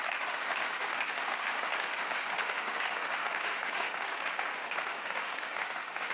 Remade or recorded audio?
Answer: remade